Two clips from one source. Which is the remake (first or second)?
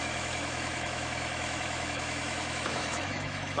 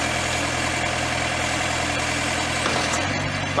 first